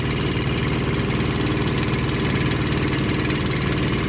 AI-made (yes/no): no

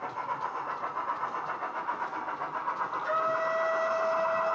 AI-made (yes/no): no